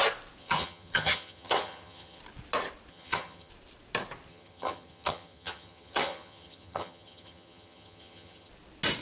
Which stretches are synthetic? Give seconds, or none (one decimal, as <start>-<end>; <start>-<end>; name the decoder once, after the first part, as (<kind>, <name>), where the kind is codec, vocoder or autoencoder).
0.4-2.2 (vocoder, HiFi-GAN); 2.9-3.5; 4.3-8.5